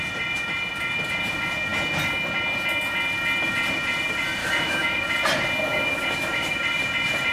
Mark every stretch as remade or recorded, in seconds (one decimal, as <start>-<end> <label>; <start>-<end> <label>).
0.0-4.4 recorded; 4.4-5.0 remade; 5.0-5.7 recorded; 5.7-6.6 remade; 6.6-7.3 recorded